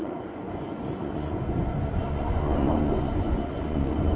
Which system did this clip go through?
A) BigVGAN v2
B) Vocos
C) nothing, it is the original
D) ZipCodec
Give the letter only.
B